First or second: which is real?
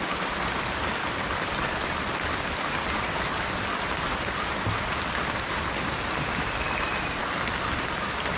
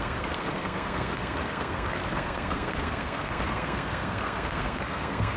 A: first